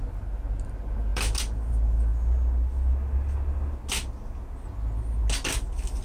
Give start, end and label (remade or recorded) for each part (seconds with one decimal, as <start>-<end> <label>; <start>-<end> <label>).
0.0-6.0 recorded